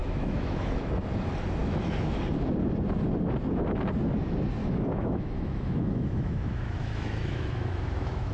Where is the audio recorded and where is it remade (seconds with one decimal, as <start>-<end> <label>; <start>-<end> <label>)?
0.0-0.9 remade; 0.9-1.6 recorded; 1.6-2.2 remade; 2.2-4.6 recorded; 4.6-8.3 remade